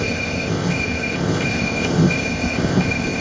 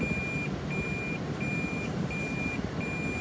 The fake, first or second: first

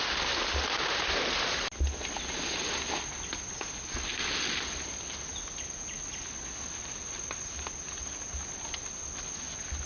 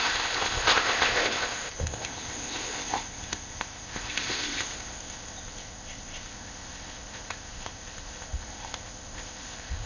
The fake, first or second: second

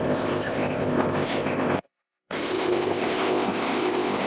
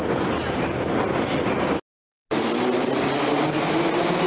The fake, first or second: first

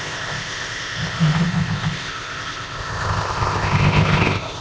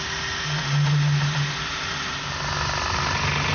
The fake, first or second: first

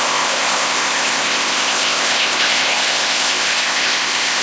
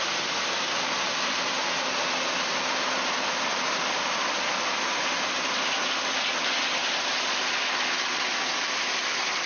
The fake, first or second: first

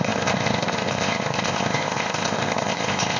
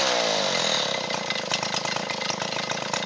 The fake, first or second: first